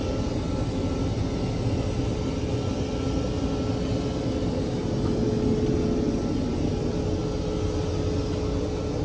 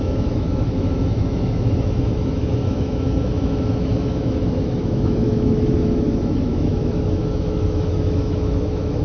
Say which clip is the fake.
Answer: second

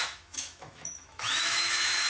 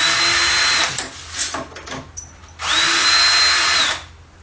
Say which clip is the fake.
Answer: first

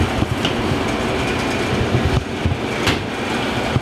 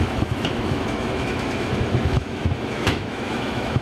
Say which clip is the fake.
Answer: second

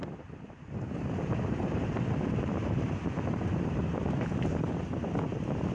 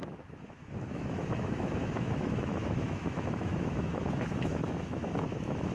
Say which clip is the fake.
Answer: second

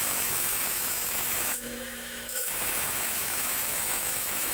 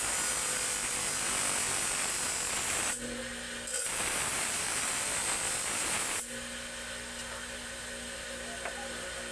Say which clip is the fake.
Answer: first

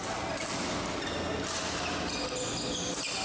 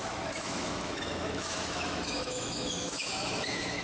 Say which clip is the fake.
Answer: second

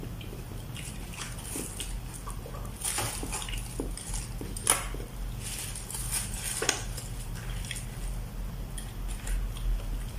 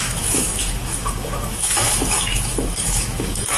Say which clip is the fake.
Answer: second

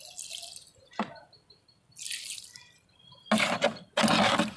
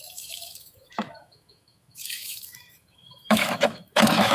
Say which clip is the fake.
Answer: second